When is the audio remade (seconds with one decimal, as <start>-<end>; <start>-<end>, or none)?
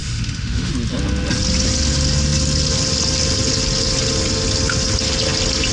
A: 0.0-0.7